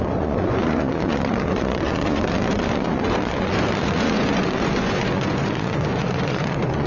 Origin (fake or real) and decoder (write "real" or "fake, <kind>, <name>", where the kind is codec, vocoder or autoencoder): fake, vocoder, Vocos